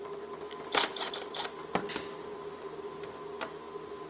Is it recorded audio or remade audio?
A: recorded